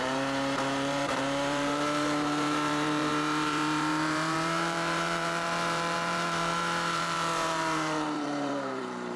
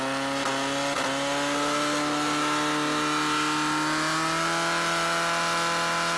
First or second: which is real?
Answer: second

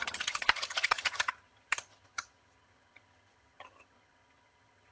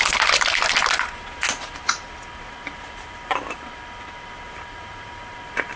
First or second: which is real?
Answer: second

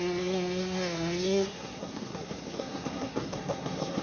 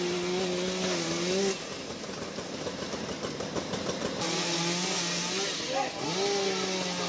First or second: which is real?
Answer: second